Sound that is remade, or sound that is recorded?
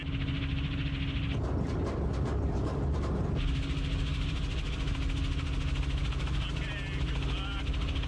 recorded